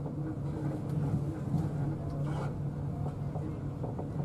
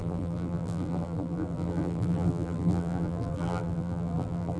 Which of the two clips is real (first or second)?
first